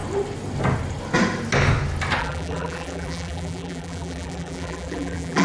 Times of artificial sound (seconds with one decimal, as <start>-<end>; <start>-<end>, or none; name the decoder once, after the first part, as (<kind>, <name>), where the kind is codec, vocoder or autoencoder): 2.2-5.4 (vocoder, BigVGAN v2)